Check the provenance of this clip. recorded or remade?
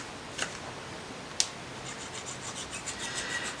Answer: recorded